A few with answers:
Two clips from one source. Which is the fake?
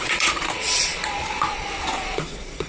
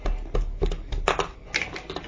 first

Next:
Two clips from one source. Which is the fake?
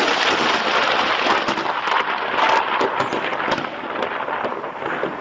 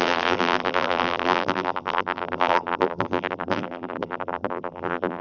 second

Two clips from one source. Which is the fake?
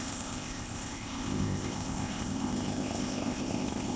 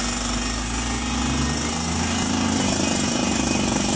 first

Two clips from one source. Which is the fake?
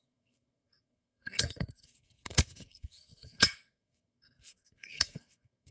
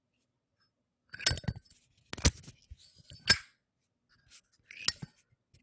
first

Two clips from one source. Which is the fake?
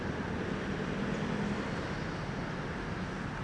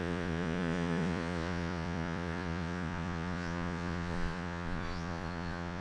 second